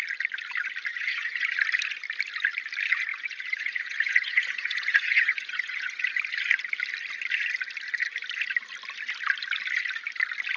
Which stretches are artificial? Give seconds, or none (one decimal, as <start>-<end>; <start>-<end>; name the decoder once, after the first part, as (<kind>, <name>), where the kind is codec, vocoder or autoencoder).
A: 0.9-1.5 (vocoder, Vocos); 3.1-6.2